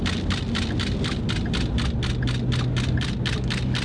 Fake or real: real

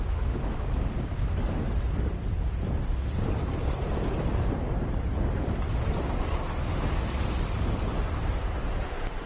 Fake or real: real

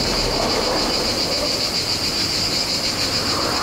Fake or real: real